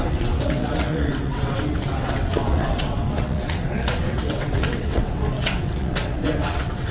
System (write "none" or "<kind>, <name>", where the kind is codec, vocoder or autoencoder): vocoder, WaveNeXt